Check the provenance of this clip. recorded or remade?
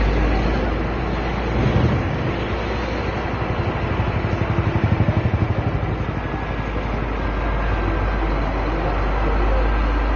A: recorded